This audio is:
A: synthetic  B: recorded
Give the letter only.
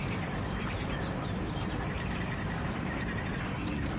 A